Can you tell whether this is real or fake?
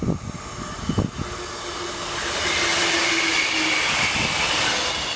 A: real